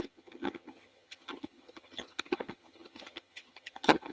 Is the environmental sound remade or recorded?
remade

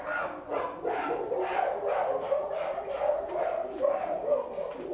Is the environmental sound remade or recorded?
recorded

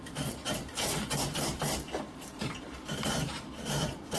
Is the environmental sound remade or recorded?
remade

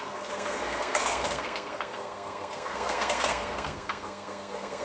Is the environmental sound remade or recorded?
remade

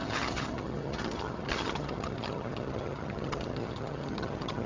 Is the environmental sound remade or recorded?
remade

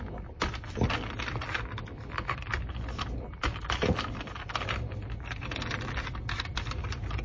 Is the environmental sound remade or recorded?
recorded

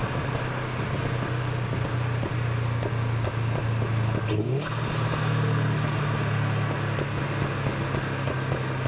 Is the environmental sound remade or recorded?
recorded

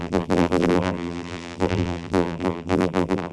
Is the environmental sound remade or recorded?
remade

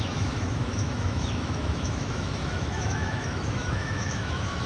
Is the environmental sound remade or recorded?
remade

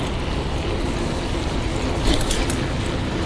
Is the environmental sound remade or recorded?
recorded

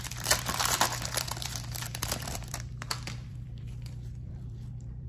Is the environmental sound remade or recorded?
remade